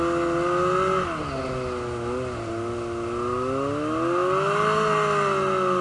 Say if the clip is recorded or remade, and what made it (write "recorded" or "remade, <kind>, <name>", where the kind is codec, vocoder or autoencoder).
recorded